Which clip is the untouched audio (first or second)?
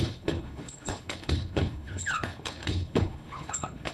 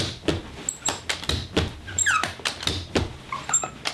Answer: second